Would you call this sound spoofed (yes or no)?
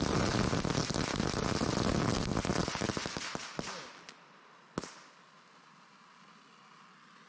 no